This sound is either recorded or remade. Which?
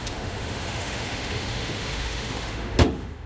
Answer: remade